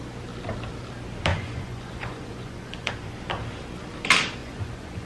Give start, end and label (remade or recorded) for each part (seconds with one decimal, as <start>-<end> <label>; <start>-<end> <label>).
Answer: 0.0-1.3 recorded; 1.3-2.9 remade; 2.9-4.4 recorded; 4.4-5.1 remade